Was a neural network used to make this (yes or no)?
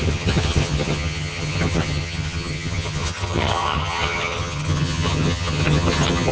yes